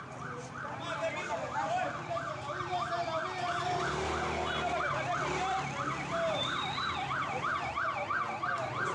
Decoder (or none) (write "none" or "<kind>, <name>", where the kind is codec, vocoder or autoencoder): none